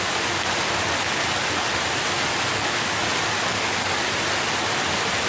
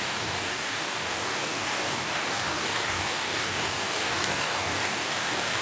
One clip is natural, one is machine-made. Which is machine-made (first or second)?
second